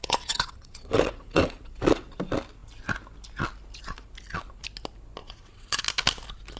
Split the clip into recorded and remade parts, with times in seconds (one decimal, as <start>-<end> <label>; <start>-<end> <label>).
0.0-2.1 remade; 2.1-5.2 recorded; 5.2-5.8 remade; 5.8-6.6 recorded